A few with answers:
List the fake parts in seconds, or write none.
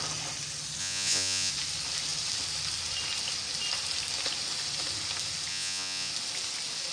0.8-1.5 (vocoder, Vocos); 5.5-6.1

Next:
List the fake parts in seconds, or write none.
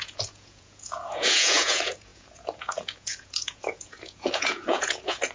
0.0-5.3 (vocoder, Vocos)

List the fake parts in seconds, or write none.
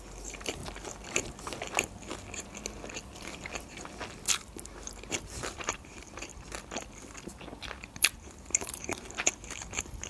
0.0-0.6 (vocoder, BigVGAN v2); 4.3-6.3; 7.9-10.1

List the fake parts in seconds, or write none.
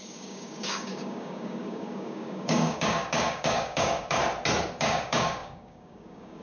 0.0-4.2 (codec, DAC); 4.8-6.4